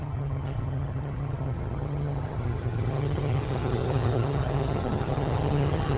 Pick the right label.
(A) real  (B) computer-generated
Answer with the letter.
B